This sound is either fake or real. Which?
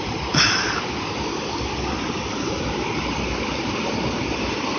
real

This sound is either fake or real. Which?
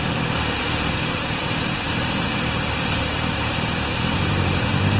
fake